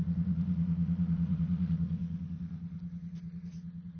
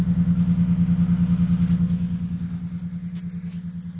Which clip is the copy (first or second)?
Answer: first